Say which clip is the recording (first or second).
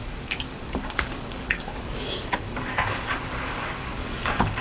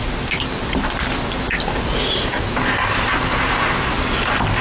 second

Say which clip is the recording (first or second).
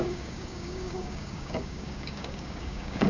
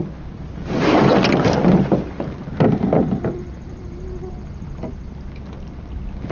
second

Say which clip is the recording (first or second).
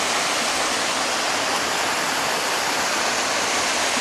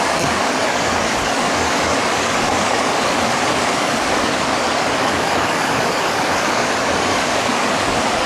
first